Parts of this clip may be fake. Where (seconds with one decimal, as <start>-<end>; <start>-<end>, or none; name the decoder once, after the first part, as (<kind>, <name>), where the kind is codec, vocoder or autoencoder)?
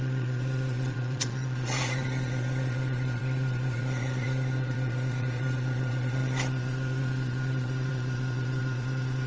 0.0-9.3 (vocoder, Vocos)